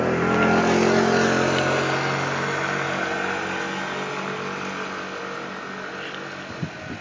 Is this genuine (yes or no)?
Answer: yes